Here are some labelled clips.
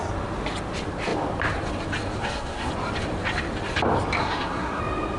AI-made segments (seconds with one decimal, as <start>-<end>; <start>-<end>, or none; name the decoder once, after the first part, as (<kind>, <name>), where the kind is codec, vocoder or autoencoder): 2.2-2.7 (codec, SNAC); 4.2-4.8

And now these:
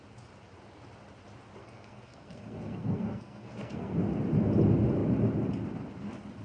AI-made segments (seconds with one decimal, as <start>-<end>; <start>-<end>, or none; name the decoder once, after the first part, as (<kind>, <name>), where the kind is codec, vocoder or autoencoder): 1.6-4.0 (codec, SNAC)

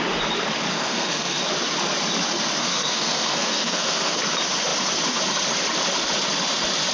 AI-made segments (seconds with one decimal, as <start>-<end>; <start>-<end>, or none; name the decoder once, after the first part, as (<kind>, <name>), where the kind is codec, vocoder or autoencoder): 0.7-1.4 (codec, SNAC); 2.6-4.2

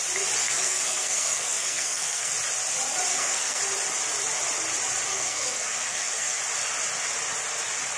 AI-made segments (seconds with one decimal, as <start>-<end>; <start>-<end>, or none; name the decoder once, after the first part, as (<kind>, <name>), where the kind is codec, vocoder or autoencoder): 0.4-2.3 (codec, SNAC); 3.1-3.6; 5.1-6.4

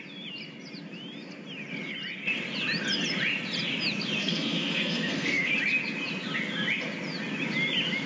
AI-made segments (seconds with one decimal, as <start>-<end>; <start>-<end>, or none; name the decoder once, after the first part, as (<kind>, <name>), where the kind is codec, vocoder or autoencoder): 4.2-5.5 (codec, SNAC)